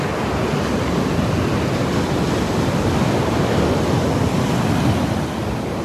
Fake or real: real